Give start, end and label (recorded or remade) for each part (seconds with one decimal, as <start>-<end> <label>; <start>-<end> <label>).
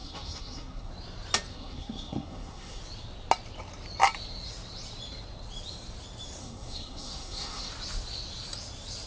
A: 0.0-0.9 remade; 0.9-1.5 recorded; 1.5-2.8 remade; 2.8-6.4 recorded; 6.4-7.7 remade; 7.7-9.1 recorded